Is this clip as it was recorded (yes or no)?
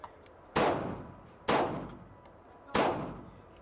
yes